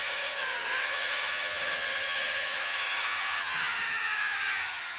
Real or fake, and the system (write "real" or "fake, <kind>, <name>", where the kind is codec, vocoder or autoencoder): fake, vocoder, HiFi-GAN